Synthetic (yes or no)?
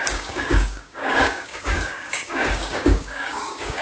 yes